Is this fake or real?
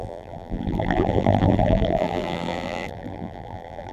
fake